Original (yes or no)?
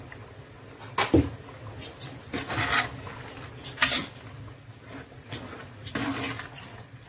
yes